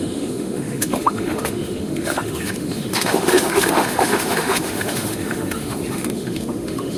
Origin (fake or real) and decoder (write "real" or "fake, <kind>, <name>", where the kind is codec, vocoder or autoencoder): fake, autoencoder, DAC-VAE